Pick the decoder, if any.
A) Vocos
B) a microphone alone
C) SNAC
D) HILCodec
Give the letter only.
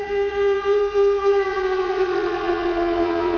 A